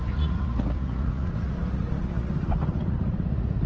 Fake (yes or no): yes